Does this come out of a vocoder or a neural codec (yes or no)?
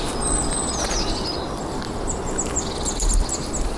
no